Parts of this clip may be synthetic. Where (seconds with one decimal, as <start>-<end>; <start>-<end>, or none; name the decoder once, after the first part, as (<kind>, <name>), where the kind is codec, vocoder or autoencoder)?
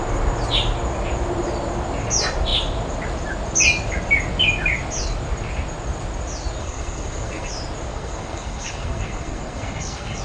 6.6-7.5 (codec, SNAC); 7.9-10.2